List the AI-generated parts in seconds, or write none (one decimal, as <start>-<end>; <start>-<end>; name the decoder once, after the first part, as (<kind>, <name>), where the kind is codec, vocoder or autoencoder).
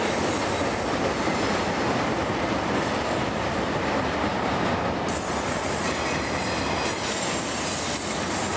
none